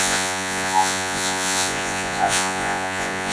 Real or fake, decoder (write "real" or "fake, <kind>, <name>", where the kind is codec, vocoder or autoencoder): fake, vocoder, Vocos